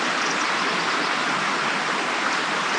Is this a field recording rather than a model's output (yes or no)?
yes